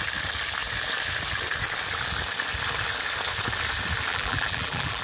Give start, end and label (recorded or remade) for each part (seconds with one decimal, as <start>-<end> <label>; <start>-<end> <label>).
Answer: 0.0-4.1 recorded; 4.1-5.0 remade